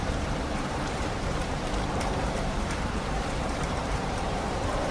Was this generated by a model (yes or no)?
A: yes